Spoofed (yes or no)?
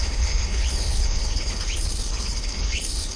yes